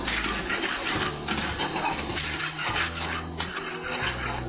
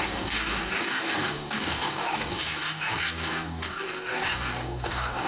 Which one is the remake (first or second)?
second